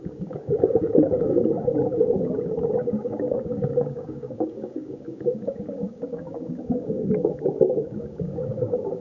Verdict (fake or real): fake